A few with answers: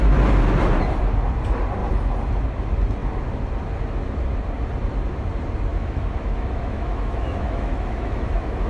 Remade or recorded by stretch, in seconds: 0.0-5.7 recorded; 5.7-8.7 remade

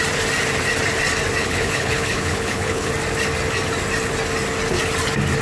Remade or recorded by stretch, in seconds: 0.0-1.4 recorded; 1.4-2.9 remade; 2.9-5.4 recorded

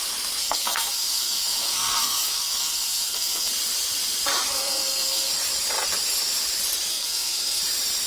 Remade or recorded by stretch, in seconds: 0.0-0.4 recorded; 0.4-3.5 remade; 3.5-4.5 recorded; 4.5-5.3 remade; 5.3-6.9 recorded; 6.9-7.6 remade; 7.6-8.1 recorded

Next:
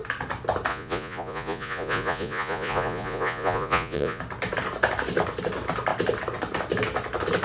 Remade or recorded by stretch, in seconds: 0.0-0.7 recorded; 0.7-4.2 remade; 4.2-7.4 recorded

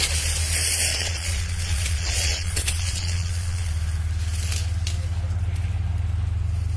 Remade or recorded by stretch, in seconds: 0.0-0.9 recorded; 0.9-3.7 remade; 3.7-6.8 recorded

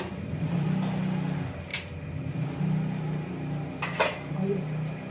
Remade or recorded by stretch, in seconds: 0.0-5.1 recorded

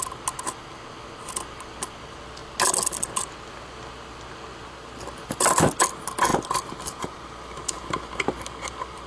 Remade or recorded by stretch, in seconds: 0.0-9.1 recorded